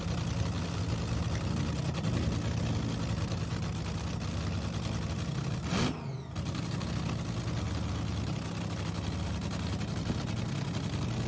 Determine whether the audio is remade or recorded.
recorded